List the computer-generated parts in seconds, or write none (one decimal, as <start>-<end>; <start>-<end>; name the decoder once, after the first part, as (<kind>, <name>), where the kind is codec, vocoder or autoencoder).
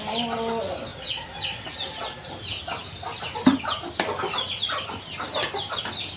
none